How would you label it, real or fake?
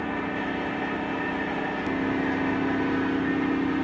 real